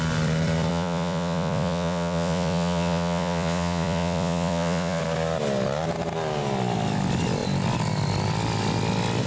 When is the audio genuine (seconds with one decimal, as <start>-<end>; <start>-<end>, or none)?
0.0-0.7; 5.0-9.3